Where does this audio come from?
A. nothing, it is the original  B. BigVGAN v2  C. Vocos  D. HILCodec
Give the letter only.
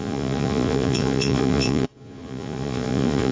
C